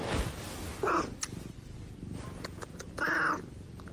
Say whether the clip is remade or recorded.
recorded